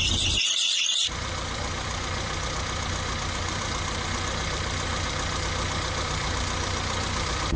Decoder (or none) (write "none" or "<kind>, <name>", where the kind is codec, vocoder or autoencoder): vocoder, BigVGAN v2